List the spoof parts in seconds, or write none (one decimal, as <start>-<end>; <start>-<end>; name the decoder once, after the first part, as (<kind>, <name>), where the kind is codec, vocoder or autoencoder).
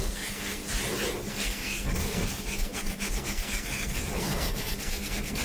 0.0-0.6 (codec, SNAC); 1.3-5.4